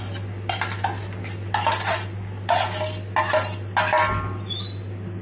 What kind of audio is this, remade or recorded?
recorded